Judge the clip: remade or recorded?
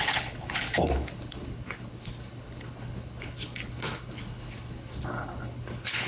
remade